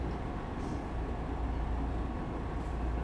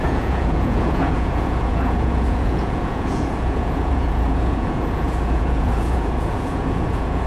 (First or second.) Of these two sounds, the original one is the first